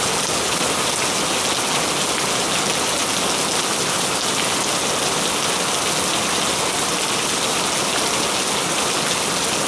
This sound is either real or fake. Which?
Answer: real